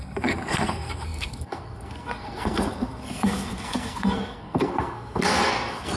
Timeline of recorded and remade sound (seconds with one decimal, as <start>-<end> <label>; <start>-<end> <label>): 0.0-6.0 remade